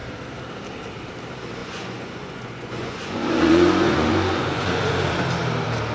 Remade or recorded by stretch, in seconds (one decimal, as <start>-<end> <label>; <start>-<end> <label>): 0.0-1.6 recorded; 1.6-5.1 remade; 5.1-5.9 recorded